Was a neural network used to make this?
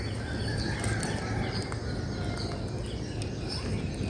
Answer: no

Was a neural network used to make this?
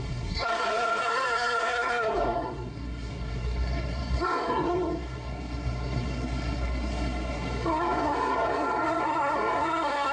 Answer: yes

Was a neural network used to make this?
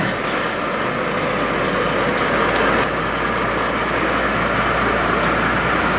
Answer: no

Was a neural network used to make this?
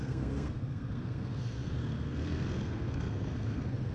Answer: yes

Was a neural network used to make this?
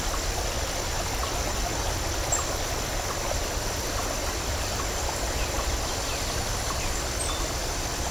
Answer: no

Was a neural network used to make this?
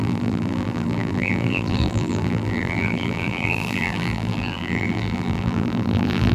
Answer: yes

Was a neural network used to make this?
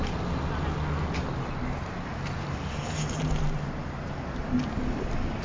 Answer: no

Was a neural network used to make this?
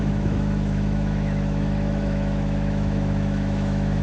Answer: yes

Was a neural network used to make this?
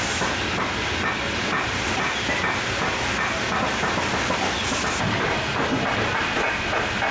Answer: no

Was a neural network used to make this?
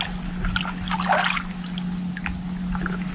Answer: no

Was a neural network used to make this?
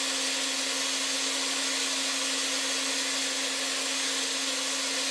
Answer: no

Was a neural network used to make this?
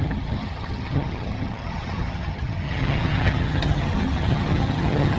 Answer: yes